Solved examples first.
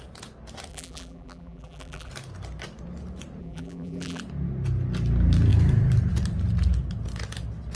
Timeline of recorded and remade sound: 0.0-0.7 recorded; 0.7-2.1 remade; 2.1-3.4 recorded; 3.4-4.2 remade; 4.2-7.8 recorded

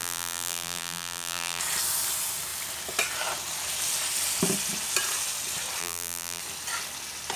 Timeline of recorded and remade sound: 0.0-1.6 remade; 1.6-5.8 recorded; 5.8-6.4 remade; 6.4-7.4 recorded